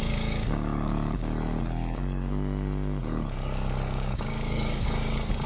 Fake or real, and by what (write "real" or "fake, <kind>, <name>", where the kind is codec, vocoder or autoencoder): fake, codec, DAC